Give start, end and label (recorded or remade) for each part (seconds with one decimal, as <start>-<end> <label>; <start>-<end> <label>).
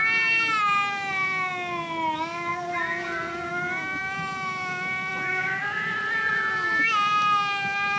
0.0-2.5 recorded; 2.5-3.5 remade; 3.5-5.6 recorded; 5.6-6.3 remade; 6.3-8.0 recorded